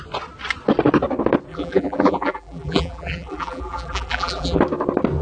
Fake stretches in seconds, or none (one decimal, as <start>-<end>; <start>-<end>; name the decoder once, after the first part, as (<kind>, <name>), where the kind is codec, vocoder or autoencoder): 1.5-4.6 (vocoder, BigVGAN v2)